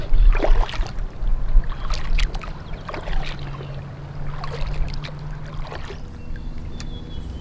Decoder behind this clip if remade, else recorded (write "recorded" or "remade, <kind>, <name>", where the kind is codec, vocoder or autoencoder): recorded